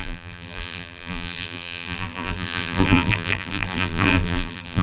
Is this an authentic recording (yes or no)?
no